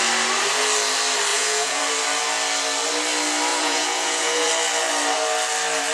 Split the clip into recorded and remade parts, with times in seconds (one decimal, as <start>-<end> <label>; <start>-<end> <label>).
0.0-1.3 recorded; 1.3-1.8 remade; 1.8-3.5 recorded; 3.5-4.5 remade; 4.5-5.9 recorded